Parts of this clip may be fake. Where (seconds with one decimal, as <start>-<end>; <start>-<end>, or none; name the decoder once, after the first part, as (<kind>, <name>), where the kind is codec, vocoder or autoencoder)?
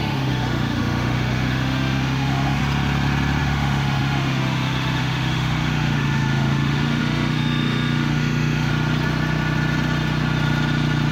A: 0.0-2.6 (autoencoder, DAC-VAE); 3.4-8.7